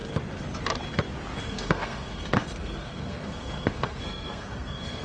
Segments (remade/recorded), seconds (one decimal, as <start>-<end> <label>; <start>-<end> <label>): 0.0-1.4 recorded; 1.4-5.0 remade